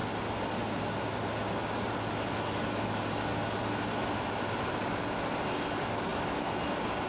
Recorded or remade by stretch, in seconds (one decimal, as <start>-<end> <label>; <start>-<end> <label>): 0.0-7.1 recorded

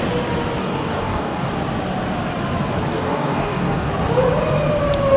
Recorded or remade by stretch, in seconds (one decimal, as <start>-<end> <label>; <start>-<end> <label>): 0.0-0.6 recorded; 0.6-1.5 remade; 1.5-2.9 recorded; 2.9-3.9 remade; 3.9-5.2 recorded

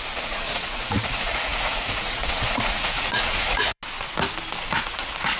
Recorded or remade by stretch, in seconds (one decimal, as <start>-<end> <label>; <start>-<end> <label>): 0.0-3.8 remade; 3.8-4.8 recorded; 4.8-5.4 remade

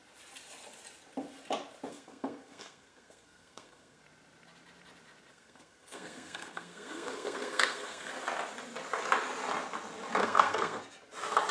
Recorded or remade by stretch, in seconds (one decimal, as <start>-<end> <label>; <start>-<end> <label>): 0.0-1.9 recorded; 1.9-4.0 remade; 4.0-5.3 recorded; 5.3-8.1 remade; 8.1-10.2 recorded; 10.2-10.8 remade; 10.8-11.5 recorded

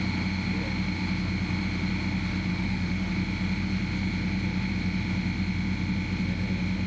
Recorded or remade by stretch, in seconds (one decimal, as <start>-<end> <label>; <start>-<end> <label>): 0.0-2.5 recorded; 2.5-3.1 remade; 3.1-6.9 recorded

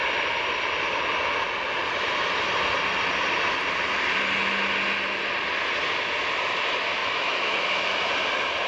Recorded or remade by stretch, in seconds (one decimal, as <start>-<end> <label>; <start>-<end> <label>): 0.0-7.0 recorded; 7.0-8.0 remade; 8.0-8.7 recorded

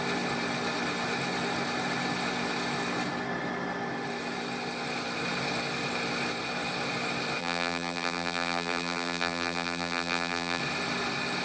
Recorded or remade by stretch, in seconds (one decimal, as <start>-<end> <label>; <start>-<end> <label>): 0.0-7.4 recorded; 7.4-10.6 remade; 10.6-11.4 recorded